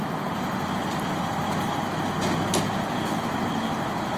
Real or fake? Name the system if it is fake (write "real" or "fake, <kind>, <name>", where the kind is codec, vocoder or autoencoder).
real